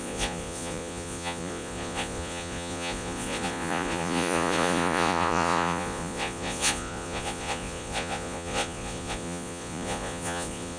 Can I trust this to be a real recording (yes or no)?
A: no